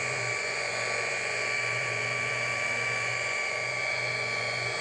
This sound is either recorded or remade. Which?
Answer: remade